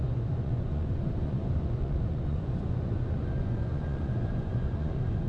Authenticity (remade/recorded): remade